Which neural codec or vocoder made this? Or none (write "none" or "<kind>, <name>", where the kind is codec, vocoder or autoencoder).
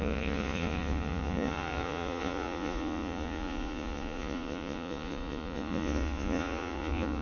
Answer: vocoder, Vocos